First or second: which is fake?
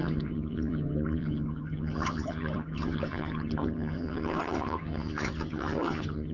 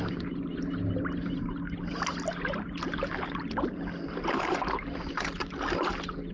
first